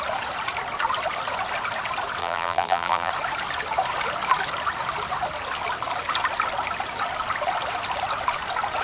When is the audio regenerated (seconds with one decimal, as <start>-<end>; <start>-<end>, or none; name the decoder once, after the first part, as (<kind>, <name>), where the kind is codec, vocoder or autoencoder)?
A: 2.2-3.1 (vocoder, BigVGAN v2)